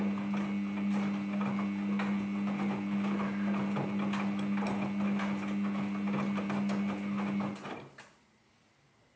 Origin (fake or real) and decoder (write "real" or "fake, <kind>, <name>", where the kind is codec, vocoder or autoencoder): real